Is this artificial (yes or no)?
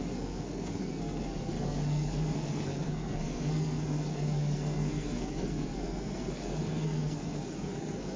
yes